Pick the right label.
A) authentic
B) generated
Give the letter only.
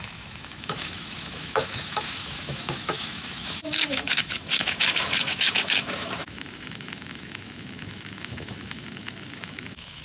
B